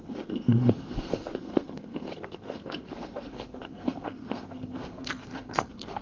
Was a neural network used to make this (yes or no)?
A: yes